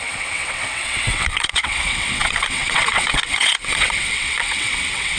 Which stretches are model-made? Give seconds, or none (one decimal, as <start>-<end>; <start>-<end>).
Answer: 0.0-5.2